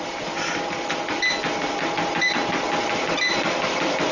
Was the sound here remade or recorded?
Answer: recorded